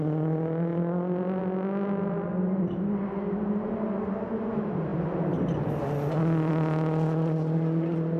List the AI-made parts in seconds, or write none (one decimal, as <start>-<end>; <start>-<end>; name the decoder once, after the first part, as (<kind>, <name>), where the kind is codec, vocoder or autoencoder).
none